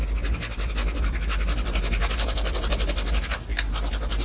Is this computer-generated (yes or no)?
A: no